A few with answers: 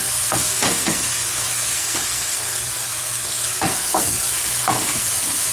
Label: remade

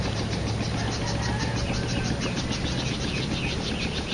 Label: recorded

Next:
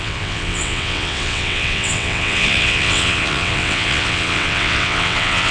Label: remade